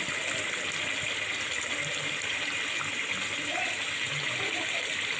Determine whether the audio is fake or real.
real